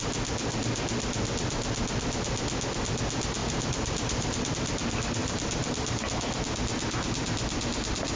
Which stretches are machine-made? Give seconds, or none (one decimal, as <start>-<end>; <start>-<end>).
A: 3.4-4.5; 5.2-6.0